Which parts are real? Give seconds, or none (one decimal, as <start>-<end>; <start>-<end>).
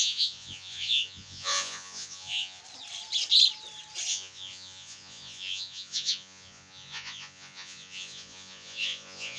2.6-4.1